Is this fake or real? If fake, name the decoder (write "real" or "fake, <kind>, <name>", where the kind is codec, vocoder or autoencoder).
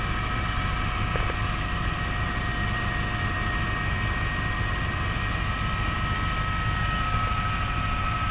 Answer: real